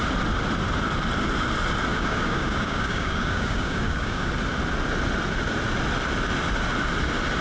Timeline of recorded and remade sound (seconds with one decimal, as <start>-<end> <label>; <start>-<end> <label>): 0.0-1.9 recorded; 1.9-4.3 remade; 4.3-7.4 recorded